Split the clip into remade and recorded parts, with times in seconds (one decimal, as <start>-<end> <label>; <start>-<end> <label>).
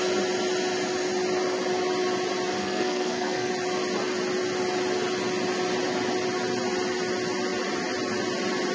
0.0-2.6 recorded; 2.6-3.5 remade; 3.5-8.7 recorded